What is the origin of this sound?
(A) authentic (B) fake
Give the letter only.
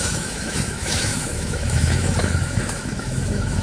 B